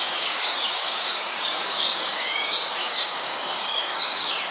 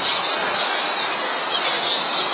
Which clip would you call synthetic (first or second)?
first